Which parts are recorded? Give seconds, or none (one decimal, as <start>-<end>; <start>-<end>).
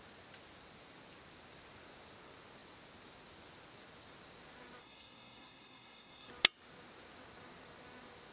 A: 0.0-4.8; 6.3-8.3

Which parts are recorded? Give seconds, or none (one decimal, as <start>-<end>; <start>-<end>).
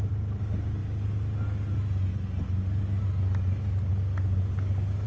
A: 0.0-5.1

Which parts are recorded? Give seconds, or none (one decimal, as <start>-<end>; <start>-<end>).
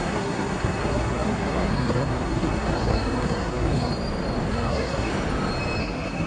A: 3.9-4.5; 5.1-5.8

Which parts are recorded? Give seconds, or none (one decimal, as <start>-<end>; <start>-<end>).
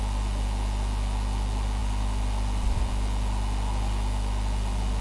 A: 0.0-5.0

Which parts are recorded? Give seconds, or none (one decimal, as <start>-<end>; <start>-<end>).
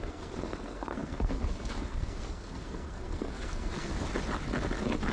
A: 3.9-5.1